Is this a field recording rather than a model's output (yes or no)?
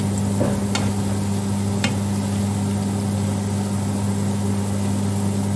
yes